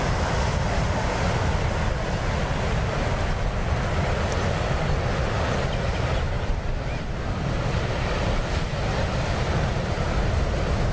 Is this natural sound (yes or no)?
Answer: yes